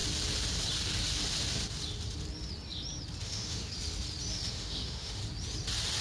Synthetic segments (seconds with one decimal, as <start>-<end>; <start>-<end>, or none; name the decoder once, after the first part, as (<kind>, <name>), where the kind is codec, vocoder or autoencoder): 3.2-3.7 (autoencoder, DAC-VAE); 4.5-5.2